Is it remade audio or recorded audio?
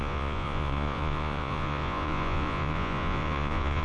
remade